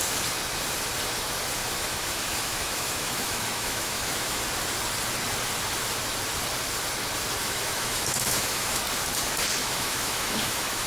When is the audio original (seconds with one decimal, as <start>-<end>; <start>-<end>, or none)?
0.0-1.6; 4.4-7.4; 8.8-9.6